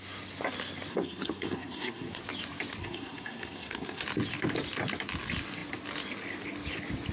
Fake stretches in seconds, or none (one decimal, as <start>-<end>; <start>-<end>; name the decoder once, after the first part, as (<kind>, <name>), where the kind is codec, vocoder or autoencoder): 0.9-2.2 (codec, SNAC); 2.8-4.0